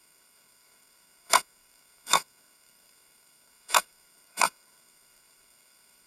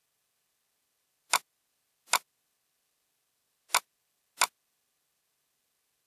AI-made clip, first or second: first